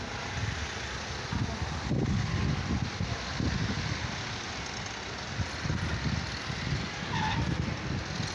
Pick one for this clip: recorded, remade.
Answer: recorded